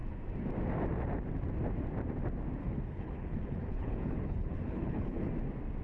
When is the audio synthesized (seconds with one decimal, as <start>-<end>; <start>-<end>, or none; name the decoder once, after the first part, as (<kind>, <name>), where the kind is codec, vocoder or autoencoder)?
2.6-5.3 (codec, HILCodec)